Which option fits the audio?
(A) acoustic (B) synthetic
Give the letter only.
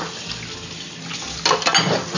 A